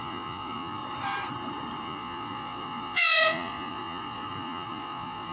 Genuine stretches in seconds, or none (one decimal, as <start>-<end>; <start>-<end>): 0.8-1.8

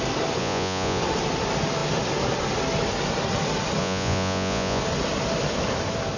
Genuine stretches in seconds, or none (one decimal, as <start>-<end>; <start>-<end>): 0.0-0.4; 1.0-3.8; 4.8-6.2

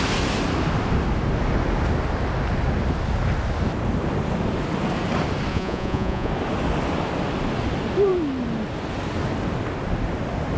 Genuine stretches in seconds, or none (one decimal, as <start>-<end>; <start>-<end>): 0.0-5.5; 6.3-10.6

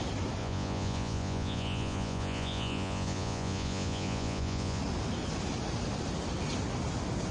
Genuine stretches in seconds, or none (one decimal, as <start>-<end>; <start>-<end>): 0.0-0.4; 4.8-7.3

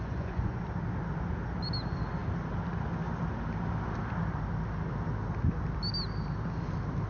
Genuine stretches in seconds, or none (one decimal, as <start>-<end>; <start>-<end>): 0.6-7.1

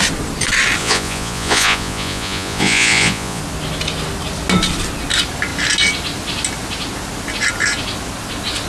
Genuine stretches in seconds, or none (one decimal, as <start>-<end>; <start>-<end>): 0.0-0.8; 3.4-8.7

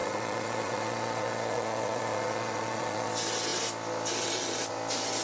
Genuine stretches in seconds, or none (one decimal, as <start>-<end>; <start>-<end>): 3.1-5.2

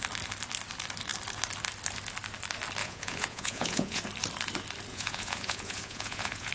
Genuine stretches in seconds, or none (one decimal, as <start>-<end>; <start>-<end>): 0.0-2.8; 4.0-4.9